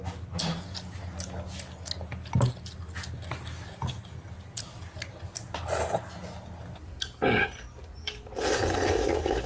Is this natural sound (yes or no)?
yes